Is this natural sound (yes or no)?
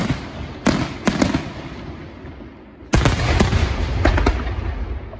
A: yes